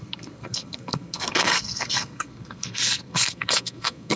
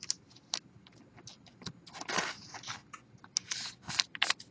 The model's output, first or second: first